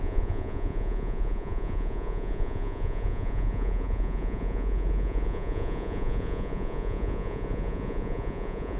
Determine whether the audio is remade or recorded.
remade